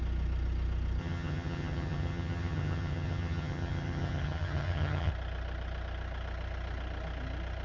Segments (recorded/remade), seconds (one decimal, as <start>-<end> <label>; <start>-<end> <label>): 0.0-1.0 recorded; 1.0-5.1 remade; 5.1-7.6 recorded